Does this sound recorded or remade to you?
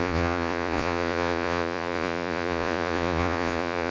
remade